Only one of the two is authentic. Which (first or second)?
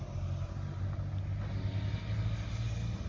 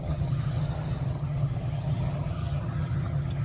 first